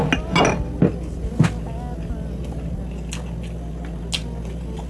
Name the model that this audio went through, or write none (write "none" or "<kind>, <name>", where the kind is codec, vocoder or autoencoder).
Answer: none